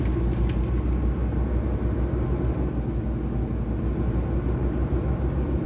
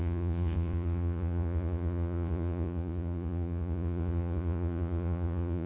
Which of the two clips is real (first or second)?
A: first